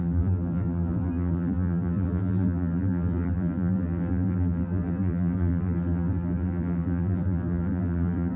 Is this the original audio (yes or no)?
no